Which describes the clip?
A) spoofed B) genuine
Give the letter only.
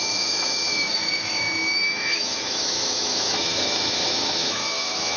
A